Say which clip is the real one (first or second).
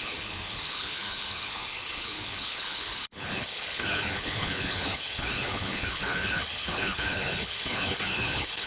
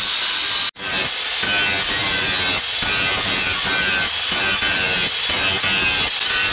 second